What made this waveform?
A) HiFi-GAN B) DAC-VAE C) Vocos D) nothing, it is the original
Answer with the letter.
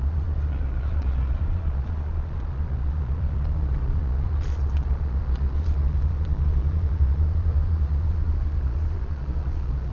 C